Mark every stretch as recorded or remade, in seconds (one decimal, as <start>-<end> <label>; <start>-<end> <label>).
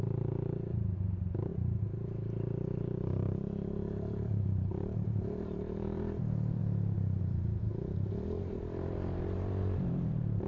0.0-6.6 remade; 6.6-7.2 recorded; 7.2-7.7 remade; 7.7-8.4 recorded; 8.4-10.5 remade